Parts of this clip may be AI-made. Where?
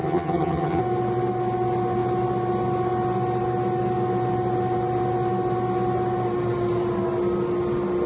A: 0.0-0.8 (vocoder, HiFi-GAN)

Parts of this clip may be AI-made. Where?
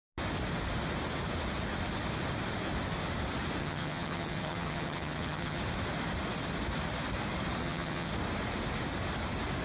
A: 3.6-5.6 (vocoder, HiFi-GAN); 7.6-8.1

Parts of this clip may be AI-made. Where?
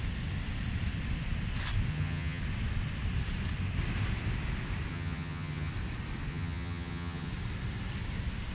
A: 1.9-2.4 (vocoder, HiFi-GAN); 4.9-5.7; 6.3-7.3